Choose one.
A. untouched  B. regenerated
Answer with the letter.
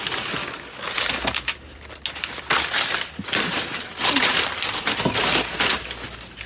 A